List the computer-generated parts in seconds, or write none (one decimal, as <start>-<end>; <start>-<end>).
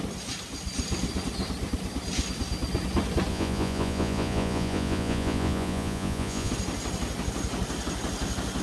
3.3-6.5